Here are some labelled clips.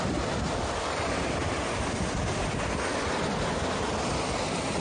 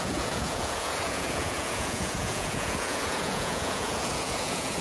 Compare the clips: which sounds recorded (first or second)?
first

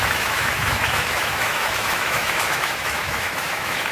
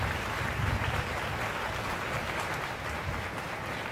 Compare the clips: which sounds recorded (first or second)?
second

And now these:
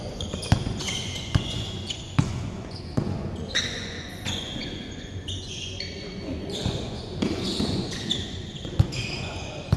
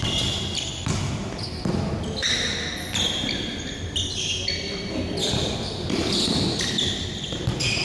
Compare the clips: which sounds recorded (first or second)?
second